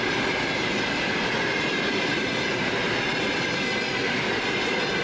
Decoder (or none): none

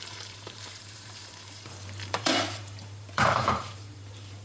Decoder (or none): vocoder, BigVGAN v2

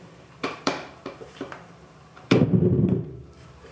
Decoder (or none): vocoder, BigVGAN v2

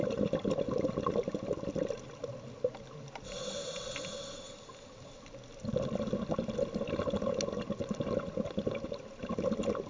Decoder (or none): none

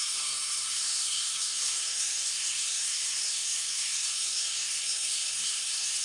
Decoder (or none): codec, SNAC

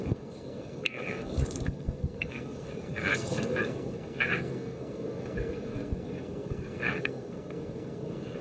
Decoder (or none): codec, SNAC